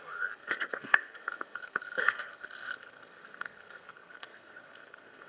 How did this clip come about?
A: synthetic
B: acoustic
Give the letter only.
A